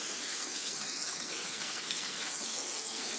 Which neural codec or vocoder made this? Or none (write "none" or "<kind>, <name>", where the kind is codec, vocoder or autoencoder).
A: codec, SNAC